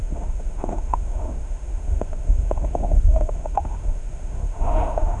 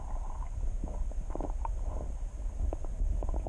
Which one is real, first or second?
second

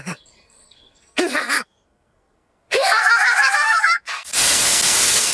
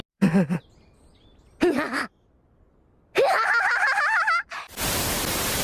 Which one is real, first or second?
second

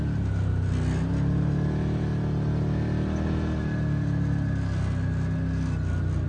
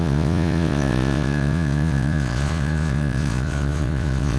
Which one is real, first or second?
first